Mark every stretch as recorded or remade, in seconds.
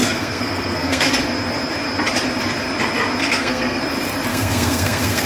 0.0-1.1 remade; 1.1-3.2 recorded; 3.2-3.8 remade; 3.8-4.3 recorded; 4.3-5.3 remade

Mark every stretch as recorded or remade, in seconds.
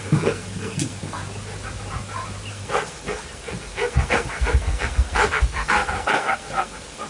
0.0-1.2 remade; 1.2-2.5 recorded; 2.5-7.1 remade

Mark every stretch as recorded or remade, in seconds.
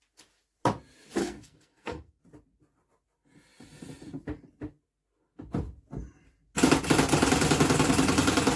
0.0-1.2 recorded; 1.2-2.2 remade; 2.2-8.6 recorded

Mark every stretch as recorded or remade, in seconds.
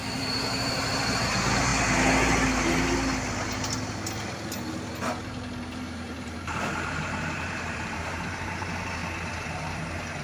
0.0-1.7 remade; 1.7-5.8 recorded; 5.8-9.0 remade; 9.0-9.5 recorded; 9.5-10.2 remade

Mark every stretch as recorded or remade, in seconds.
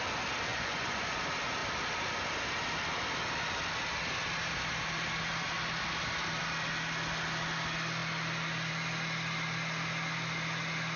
0.0-0.5 recorded; 0.5-1.2 remade; 1.2-11.0 recorded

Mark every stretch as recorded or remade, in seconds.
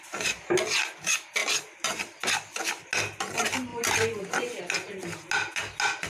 0.0-1.4 recorded; 1.4-2.6 remade; 2.6-3.7 recorded; 3.7-4.6 remade; 4.6-6.1 recorded